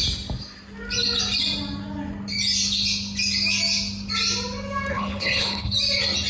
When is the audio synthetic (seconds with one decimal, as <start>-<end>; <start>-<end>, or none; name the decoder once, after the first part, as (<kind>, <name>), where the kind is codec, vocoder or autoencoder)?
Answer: 4.9-5.7 (codec, HILCodec)